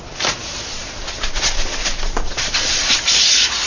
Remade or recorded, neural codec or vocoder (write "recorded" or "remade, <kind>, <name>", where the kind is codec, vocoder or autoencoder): recorded